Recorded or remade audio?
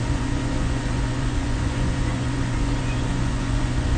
remade